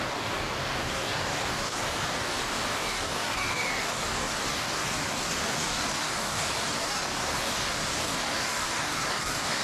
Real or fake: fake